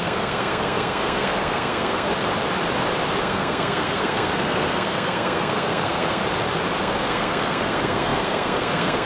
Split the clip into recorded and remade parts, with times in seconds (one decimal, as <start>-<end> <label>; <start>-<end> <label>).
0.0-2.1 remade; 2.1-3.2 recorded; 3.2-6.2 remade; 6.2-6.8 recorded; 6.8-9.1 remade